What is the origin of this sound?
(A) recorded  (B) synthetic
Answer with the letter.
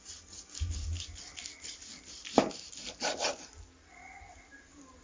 A